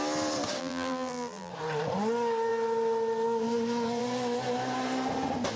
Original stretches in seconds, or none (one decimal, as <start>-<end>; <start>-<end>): 0.0-0.6; 1.5-5.6